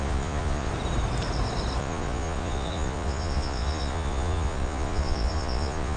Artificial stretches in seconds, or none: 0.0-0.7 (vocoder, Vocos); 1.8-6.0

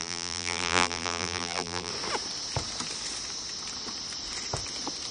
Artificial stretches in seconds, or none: 0.0-1.9 (vocoder, BigVGAN v2)

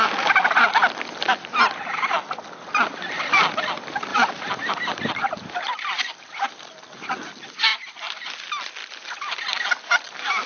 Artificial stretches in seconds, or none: 4.1-6.6 (vocoder, BigVGAN v2); 7.7-8.3

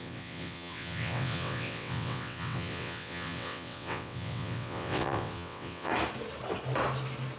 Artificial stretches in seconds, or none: 0.0-5.9 (vocoder, WaveNeXt)